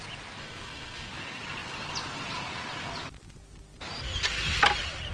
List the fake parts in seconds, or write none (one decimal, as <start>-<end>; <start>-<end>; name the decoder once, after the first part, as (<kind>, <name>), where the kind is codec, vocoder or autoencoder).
0.4-1.1 (codec, SNAC)